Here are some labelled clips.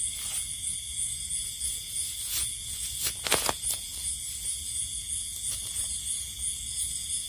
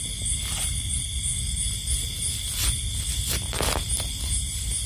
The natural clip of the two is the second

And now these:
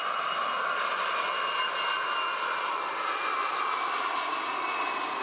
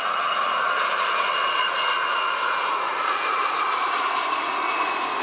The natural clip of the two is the first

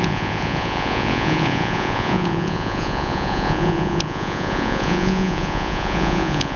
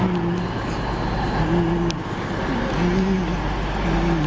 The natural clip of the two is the second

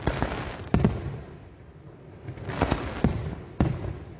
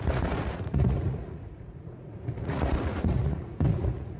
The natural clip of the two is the first